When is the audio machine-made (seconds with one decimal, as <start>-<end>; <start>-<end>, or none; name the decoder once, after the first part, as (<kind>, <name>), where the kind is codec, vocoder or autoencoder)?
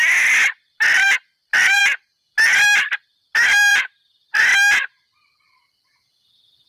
0.9-1.8 (vocoder, BigVGAN v2); 3.7-4.4